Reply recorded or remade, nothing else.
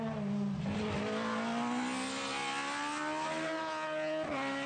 recorded